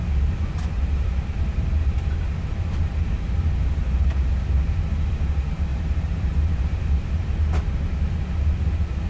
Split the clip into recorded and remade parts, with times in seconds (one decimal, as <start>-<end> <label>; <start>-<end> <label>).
0.0-0.8 recorded; 0.8-3.3 remade; 3.3-5.7 recorded; 5.7-7.2 remade; 7.2-9.1 recorded